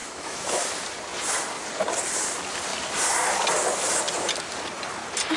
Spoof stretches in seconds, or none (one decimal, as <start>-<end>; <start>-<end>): 0.0-0.6